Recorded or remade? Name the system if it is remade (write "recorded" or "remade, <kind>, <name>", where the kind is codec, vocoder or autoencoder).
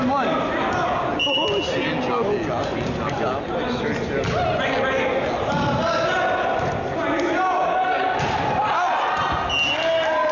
recorded